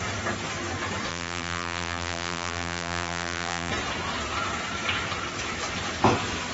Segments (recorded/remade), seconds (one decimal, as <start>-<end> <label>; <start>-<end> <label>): 0.0-1.1 recorded; 1.1-3.7 remade; 3.7-6.5 recorded